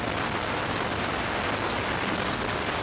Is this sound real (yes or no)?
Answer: yes